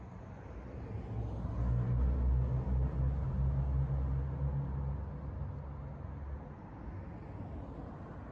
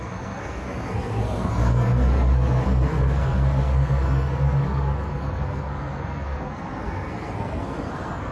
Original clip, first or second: first